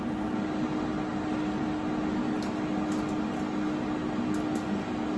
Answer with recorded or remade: recorded